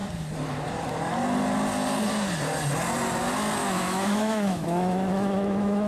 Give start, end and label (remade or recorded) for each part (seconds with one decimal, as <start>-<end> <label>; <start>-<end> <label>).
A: 0.0-3.6 recorded; 3.6-5.9 remade